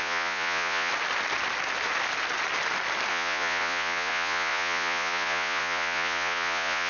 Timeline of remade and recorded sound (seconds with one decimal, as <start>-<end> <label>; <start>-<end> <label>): 0.0-0.9 remade; 0.9-3.1 recorded; 3.1-6.9 remade